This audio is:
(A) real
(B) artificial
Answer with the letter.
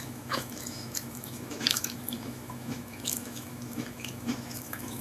B